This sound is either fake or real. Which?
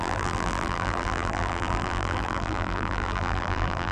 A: fake